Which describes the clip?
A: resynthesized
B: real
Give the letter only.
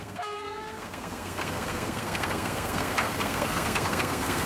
A